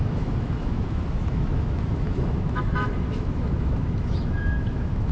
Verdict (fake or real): fake